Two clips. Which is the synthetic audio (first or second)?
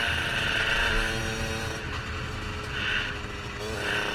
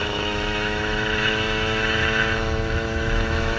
second